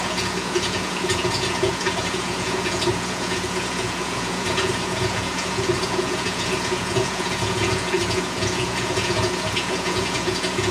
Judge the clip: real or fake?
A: fake